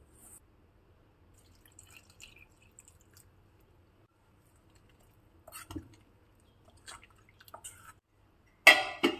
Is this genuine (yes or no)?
yes